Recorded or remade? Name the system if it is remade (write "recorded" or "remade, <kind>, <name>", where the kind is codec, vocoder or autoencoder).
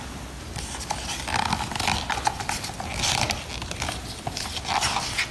recorded